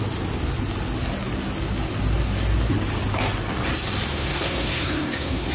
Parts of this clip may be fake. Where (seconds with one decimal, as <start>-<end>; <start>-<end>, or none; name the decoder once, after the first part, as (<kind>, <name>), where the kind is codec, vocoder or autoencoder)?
4.1-5.5 (codec, SNAC)